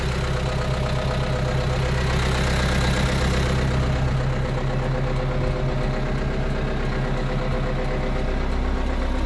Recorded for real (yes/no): yes